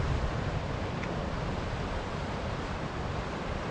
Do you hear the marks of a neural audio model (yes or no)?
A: yes